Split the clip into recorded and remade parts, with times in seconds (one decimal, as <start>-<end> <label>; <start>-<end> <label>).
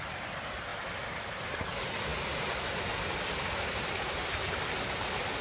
0.0-5.4 recorded